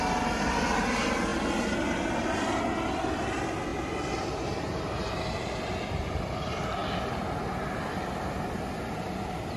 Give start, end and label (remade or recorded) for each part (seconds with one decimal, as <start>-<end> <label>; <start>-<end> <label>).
0.0-9.6 recorded